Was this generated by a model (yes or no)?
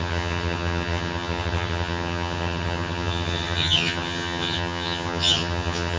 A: yes